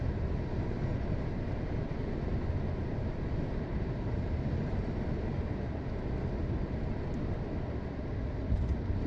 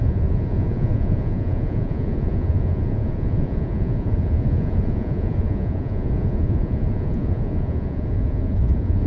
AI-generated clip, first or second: second